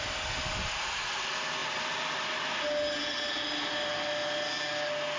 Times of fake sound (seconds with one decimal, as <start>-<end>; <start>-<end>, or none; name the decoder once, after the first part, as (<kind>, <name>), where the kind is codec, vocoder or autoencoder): none